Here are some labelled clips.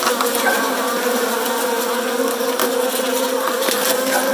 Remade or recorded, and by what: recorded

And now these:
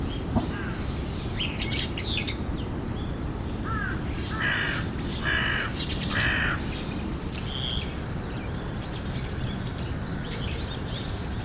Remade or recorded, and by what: recorded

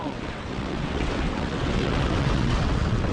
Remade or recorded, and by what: remade, vocoder, WaveNeXt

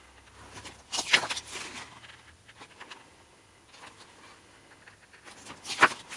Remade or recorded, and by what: recorded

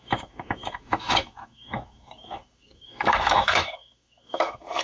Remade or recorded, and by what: remade, autoencoder, DAC-VAE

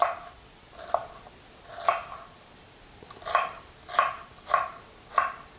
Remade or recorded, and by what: recorded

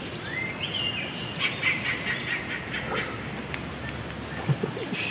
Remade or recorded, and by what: recorded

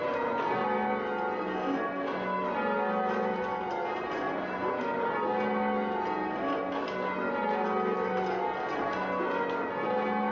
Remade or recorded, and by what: recorded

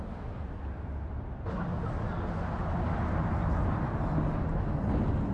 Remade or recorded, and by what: recorded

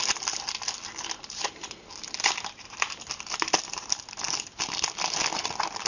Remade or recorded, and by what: recorded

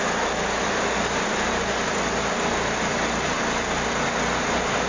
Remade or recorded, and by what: recorded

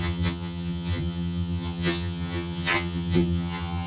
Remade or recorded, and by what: remade, vocoder, HiFi-GAN